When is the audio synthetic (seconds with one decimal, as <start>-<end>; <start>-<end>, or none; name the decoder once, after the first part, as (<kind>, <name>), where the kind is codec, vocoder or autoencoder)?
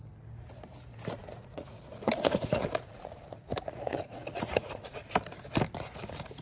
1.2-5.0 (vocoder, Vocos)